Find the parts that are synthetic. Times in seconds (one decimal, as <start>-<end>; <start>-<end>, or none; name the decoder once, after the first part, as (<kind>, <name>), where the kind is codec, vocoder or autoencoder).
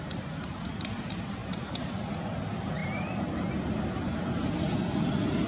none